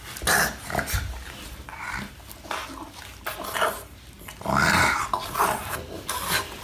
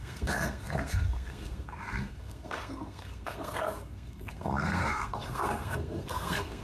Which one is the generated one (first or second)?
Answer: second